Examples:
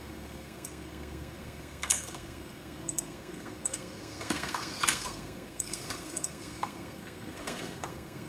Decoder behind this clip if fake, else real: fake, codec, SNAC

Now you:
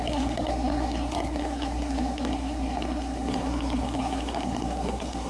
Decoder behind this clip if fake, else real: fake, codec, SNAC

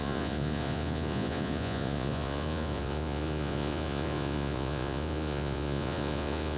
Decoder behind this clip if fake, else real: fake, vocoder, Vocos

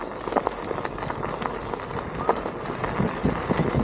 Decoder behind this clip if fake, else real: real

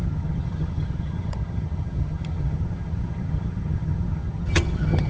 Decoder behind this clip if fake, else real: fake, vocoder, HiFi-GAN